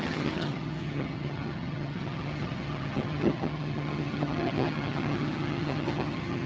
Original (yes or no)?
no